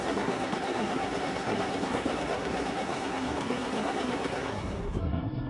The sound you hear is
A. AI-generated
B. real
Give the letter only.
A